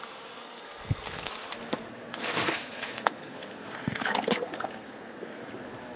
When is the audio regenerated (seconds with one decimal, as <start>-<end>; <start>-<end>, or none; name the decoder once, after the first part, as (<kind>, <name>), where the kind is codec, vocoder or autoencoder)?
0.4-1.3 (codec, SNAC); 1.9-5.5